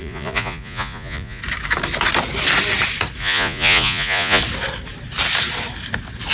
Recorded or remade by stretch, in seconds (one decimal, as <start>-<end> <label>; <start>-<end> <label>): 0.0-1.4 remade; 1.4-3.2 recorded; 3.2-4.4 remade; 4.4-6.3 recorded